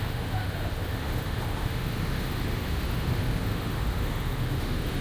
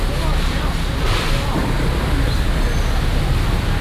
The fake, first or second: first